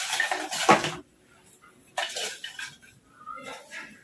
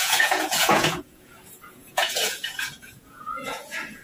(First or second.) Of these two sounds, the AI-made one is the second